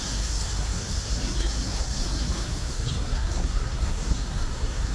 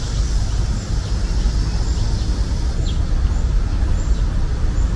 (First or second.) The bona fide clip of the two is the second